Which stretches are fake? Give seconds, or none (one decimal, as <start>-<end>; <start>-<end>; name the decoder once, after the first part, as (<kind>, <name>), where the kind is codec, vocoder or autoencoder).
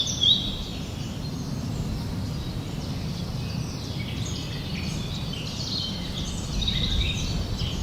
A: none